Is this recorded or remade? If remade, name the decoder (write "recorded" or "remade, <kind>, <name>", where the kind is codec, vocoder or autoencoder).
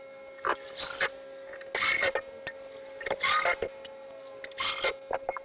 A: recorded